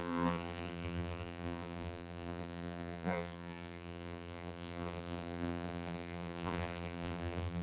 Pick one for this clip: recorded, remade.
remade